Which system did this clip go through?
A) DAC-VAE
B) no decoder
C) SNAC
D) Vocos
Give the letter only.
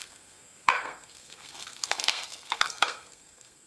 C